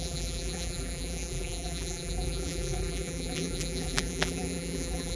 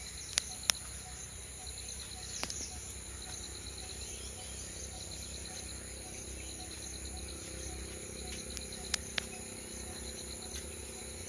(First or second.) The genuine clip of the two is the second